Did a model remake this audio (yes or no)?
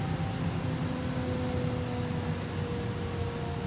no